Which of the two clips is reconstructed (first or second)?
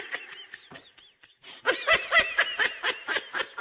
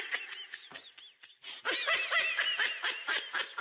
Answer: first